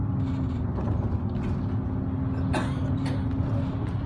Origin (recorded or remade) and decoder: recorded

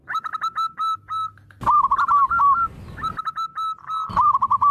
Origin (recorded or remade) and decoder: recorded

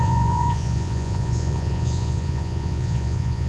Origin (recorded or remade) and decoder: remade, vocoder, Vocos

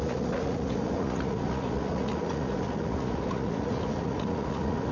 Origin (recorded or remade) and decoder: remade, vocoder, Vocos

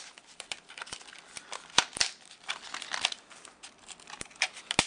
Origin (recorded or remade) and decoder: recorded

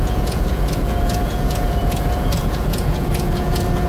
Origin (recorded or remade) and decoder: remade, vocoder, Vocos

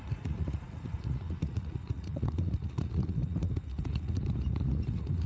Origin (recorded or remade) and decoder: remade, vocoder, Vocos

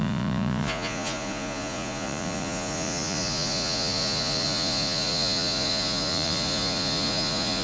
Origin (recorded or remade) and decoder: remade, vocoder, Vocos